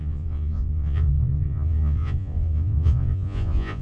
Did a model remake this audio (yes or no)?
yes